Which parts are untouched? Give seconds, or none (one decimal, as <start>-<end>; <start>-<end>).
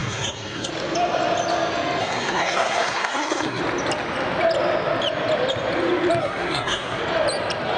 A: 0.7-2.0; 3.6-6.2; 7.0-7.8